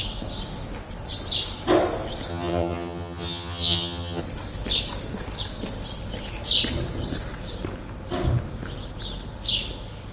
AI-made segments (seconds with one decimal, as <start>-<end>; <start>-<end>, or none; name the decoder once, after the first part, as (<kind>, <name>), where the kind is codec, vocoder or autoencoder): 2.3-4.2 (vocoder, HiFi-GAN)

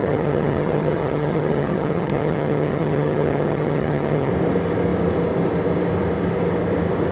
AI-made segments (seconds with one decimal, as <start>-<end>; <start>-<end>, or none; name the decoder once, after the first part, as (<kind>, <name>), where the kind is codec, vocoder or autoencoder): 0.0-4.3 (vocoder, HiFi-GAN)

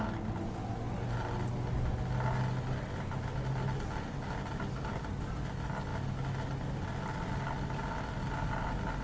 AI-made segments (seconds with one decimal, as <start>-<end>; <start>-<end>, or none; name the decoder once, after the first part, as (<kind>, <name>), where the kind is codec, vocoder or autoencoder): none

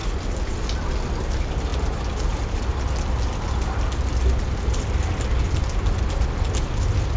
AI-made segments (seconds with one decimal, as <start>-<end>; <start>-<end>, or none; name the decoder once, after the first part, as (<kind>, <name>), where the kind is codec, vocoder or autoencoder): none

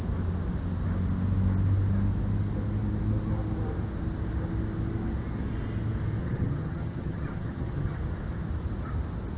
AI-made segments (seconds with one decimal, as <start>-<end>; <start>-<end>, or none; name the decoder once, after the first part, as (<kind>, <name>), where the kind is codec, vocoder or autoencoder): 6.2-8.0 (vocoder, HiFi-GAN)

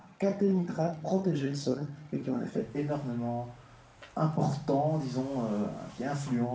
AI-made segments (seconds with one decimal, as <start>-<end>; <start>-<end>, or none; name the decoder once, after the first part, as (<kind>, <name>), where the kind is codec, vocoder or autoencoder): 0.0-2.6 (vocoder, HiFi-GAN)